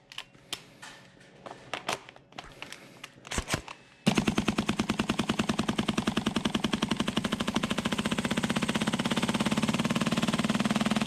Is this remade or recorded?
recorded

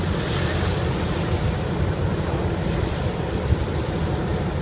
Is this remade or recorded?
recorded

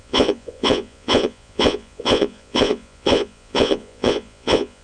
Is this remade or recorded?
remade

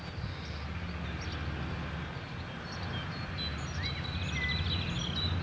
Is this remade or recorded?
recorded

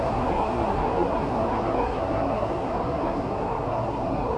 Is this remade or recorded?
remade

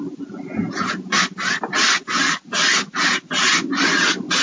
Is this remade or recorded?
recorded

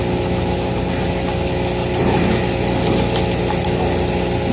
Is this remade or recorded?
recorded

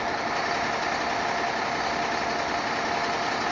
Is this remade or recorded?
recorded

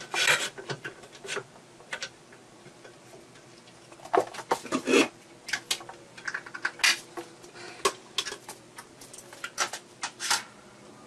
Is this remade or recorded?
recorded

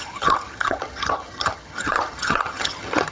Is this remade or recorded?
remade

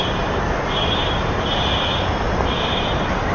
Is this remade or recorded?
remade